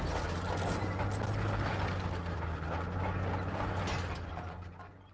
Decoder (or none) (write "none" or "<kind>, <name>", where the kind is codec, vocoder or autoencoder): none